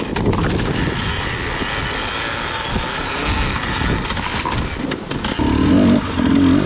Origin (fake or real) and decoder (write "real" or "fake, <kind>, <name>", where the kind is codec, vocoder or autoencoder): real